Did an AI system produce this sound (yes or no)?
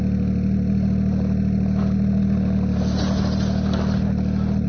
no